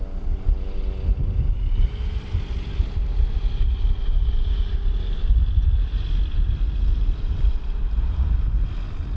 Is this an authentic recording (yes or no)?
yes